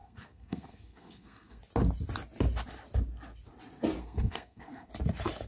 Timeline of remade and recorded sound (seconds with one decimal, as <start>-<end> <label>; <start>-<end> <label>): 0.0-1.6 remade; 1.6-4.0 recorded; 4.0-4.9 remade; 4.9-5.5 recorded